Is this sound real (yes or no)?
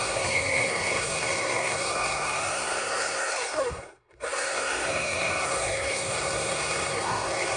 no